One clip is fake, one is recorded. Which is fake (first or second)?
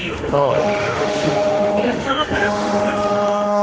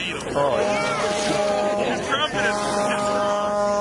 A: first